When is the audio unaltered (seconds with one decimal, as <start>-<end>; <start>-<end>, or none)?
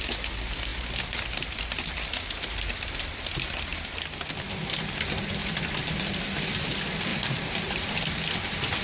0.0-5.4; 6.5-7.1; 8.0-8.8